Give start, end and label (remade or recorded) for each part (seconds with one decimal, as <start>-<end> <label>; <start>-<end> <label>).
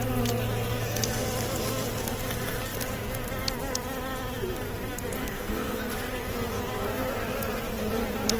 0.0-5.2 recorded; 5.2-5.8 remade; 5.8-8.4 recorded